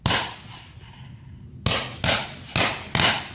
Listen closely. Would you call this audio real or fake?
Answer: real